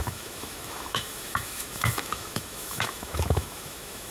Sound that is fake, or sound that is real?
fake